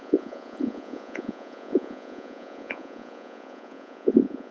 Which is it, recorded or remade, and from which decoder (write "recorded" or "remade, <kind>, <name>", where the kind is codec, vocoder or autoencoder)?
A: remade, vocoder, Vocos